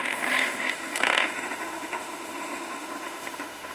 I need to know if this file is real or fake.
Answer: fake